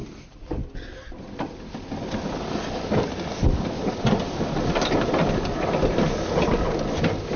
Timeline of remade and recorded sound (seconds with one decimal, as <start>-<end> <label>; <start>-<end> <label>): 0.0-7.4 recorded